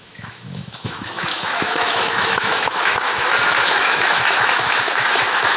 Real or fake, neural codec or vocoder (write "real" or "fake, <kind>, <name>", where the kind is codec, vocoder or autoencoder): fake, autoencoder, DAC-VAE